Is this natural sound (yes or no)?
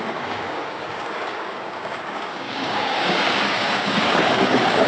no